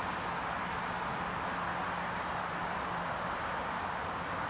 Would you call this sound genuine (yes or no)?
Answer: yes